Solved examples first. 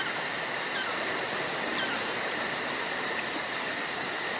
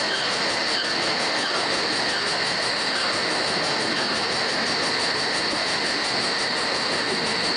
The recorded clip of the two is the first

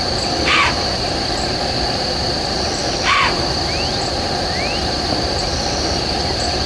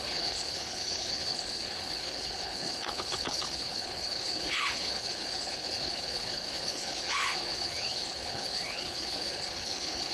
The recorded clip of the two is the first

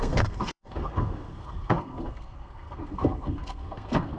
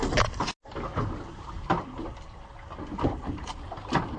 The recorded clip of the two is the second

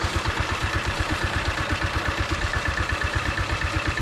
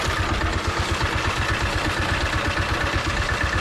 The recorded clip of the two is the second